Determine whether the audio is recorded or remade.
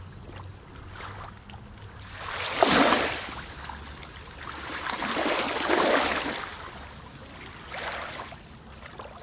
recorded